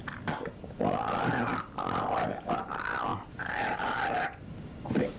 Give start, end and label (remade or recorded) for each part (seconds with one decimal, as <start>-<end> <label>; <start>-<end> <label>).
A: 0.0-5.2 recorded